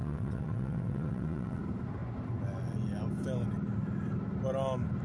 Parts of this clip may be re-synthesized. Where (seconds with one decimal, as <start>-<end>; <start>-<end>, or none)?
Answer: 0.0-1.6